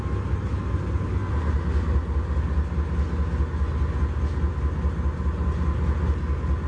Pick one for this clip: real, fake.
real